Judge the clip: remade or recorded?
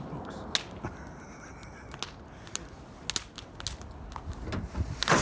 recorded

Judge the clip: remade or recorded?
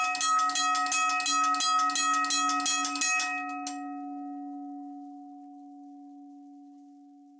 recorded